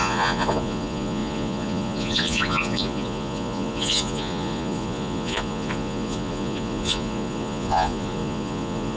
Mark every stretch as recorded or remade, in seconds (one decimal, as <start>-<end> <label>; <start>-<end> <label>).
0.0-9.0 remade